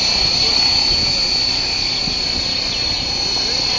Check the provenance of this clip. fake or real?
real